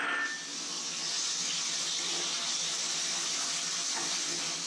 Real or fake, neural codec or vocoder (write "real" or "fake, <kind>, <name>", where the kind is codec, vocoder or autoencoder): real